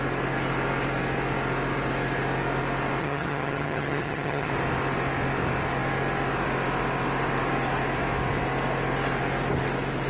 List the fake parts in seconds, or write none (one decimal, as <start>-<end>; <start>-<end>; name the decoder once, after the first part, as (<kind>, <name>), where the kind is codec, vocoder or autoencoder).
3.0-4.5 (vocoder, HiFi-GAN)